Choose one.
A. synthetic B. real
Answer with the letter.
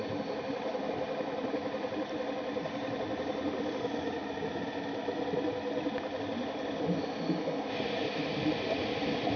B